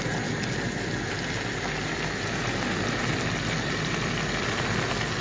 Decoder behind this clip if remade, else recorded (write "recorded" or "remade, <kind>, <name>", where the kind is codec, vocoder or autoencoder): recorded